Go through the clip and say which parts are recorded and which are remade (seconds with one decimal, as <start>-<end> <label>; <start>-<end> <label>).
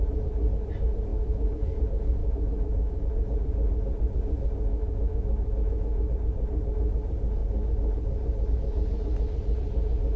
0.0-1.1 recorded; 1.1-1.8 remade; 1.8-2.2 recorded; 2.2-3.0 remade; 3.0-4.7 recorded; 4.7-6.1 remade; 6.1-10.2 recorded